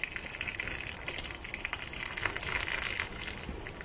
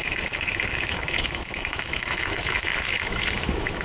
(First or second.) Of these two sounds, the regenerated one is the second